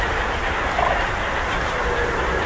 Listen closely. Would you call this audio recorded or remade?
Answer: recorded